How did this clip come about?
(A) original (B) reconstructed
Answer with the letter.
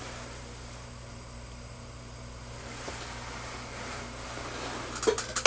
A